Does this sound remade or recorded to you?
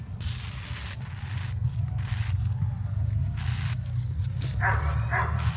recorded